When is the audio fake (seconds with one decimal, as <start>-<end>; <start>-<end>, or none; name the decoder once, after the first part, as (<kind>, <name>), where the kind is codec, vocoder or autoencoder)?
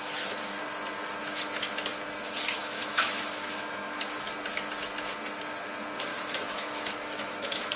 2.6-4.0 (autoencoder, DAC-VAE); 6.1-7.8